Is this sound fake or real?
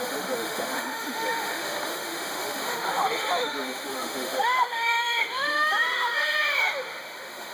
fake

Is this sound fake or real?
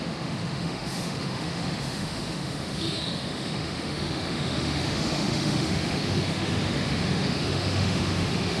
fake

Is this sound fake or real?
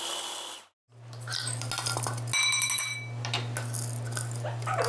real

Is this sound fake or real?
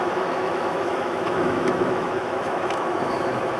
fake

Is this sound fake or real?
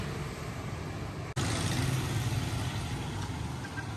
real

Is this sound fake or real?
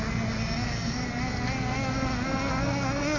real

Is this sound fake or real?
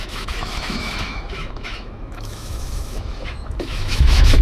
fake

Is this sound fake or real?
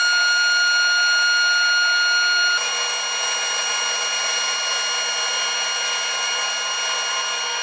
real